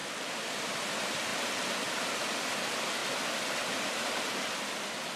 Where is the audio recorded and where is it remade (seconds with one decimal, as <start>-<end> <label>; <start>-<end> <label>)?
0.0-5.2 recorded